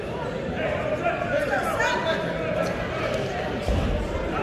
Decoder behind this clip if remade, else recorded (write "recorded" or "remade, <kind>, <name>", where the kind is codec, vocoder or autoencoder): remade, vocoder, BigVGAN v2